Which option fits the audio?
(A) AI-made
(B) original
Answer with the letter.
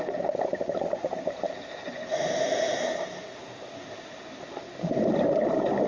B